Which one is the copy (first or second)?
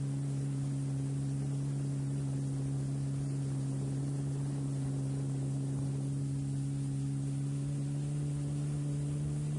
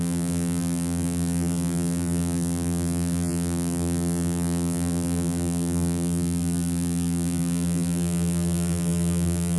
second